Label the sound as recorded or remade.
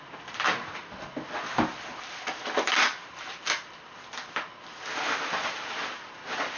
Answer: recorded